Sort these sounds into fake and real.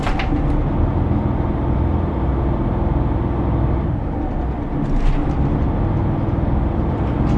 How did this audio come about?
real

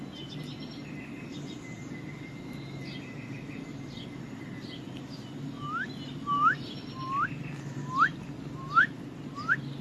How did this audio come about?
real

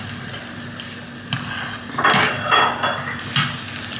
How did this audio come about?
real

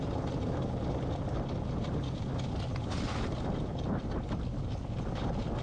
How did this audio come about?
real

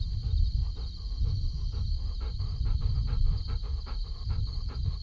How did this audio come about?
real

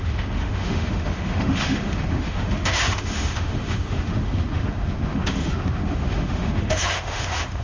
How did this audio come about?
fake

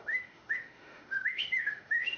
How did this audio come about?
fake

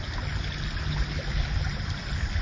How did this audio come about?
real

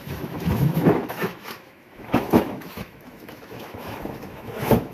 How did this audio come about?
fake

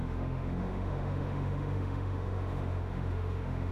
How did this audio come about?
fake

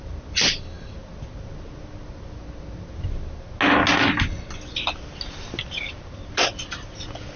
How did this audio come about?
real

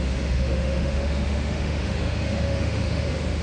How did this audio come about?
fake